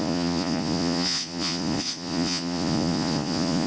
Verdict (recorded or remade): remade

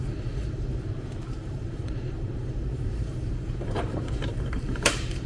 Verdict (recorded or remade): remade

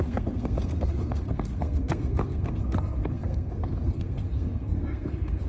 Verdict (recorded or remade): remade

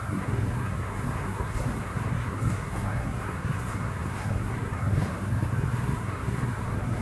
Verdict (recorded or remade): remade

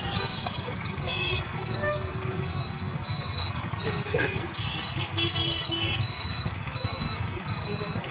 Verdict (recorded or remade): remade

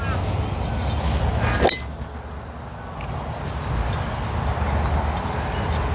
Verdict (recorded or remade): recorded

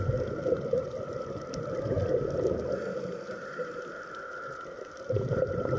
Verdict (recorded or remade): recorded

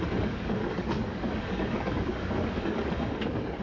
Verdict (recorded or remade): remade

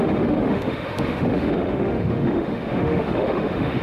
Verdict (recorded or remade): remade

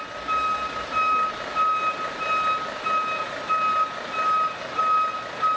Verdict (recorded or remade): recorded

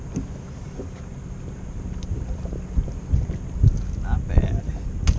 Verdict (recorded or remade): recorded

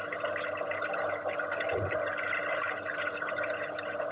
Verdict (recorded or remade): recorded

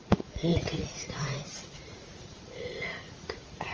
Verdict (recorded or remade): remade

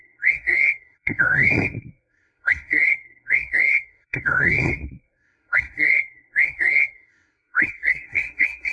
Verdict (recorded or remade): remade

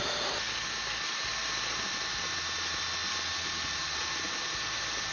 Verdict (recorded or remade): recorded